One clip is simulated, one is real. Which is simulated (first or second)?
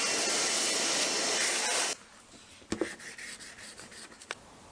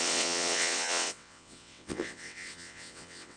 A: second